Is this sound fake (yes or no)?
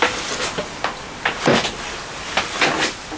no